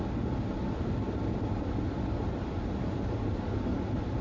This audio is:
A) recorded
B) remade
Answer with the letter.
A